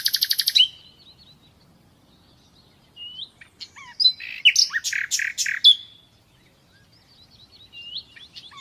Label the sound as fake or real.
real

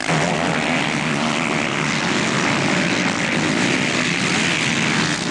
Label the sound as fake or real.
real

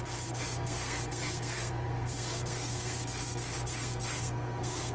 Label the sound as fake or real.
fake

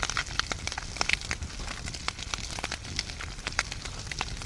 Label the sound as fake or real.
real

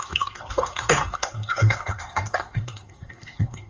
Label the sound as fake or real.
fake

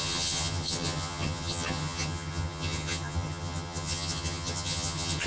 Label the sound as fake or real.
fake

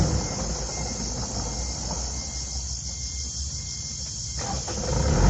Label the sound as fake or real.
real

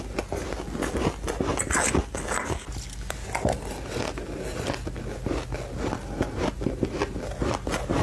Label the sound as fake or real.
real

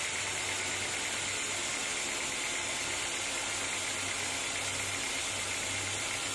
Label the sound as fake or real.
real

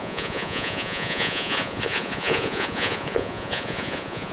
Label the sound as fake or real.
fake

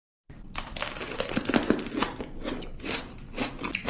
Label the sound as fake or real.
real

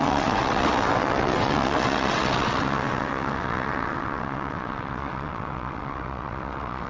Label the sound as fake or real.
fake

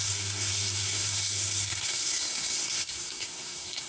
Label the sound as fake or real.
fake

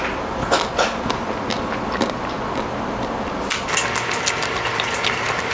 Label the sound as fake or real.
real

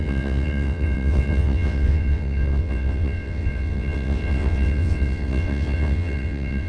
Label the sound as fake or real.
fake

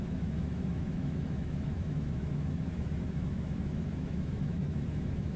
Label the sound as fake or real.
fake